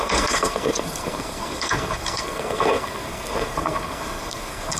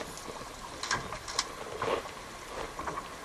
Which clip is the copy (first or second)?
first